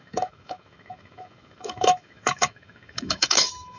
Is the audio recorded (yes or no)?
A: no